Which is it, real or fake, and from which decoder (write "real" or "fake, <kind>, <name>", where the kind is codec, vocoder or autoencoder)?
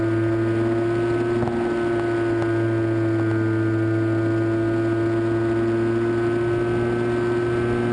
real